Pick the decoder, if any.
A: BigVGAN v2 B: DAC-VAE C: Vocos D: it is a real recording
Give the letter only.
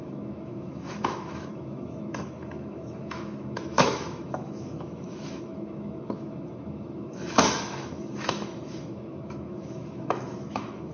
B